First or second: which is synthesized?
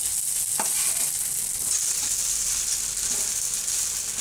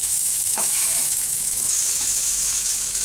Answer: second